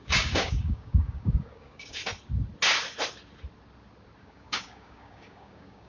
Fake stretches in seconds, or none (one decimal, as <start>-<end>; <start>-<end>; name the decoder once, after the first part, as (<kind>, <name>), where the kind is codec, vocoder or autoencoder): 0.0-2.0 (codec, DAC); 4.2-5.9